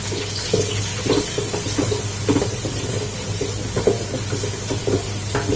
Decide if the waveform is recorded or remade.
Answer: recorded